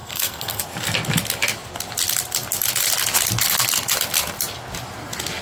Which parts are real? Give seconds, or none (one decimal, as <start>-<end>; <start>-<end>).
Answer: 0.6-5.4